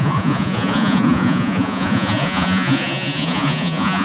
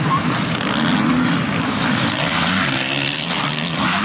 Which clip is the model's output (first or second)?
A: first